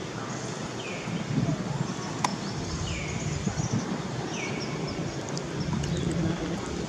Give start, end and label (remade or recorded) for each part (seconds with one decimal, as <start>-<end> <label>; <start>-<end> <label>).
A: 0.0-6.9 recorded